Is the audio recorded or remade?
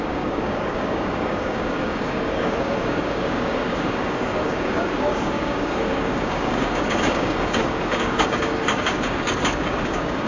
remade